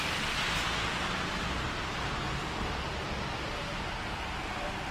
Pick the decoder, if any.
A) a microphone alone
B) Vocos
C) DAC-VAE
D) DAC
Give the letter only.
A